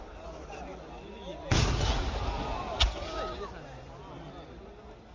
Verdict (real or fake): real